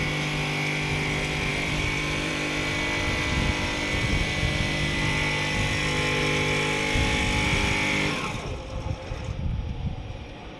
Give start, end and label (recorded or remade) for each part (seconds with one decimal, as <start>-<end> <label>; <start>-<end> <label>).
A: 0.0-1.5 recorded; 1.5-2.3 remade; 2.3-10.6 recorded